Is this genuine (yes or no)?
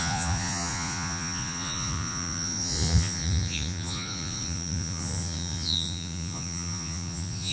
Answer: no